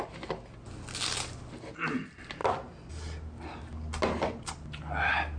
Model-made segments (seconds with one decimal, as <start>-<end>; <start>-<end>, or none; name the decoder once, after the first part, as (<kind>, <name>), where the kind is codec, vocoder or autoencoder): none

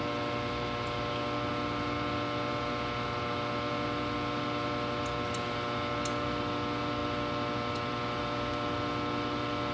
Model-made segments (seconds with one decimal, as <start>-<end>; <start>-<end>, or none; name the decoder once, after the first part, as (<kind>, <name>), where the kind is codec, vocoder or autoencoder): none

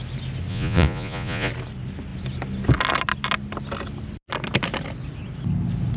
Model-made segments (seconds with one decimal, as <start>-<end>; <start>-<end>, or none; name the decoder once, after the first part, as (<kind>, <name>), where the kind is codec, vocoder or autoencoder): 0.5-1.5 (vocoder, Vocos)

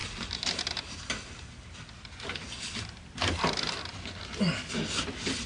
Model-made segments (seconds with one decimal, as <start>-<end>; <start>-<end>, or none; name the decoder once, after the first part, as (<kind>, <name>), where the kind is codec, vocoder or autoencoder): 0.0-1.0 (vocoder, BigVGAN v2)

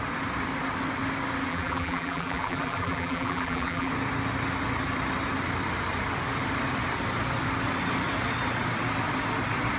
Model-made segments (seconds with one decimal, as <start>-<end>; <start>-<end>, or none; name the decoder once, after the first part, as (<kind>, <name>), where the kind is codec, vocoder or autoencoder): 1.5-3.9 (vocoder, BigVGAN v2)

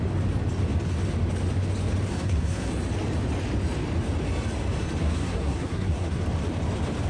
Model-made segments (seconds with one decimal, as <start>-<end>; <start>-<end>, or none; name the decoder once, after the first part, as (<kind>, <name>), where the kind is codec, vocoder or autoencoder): 2.1-2.7 (codec, SNAC); 5.0-6.2

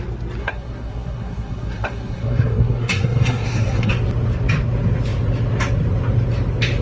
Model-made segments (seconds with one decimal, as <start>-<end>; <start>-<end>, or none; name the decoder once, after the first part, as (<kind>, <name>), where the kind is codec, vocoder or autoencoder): 0.4-3.9 (codec, SNAC)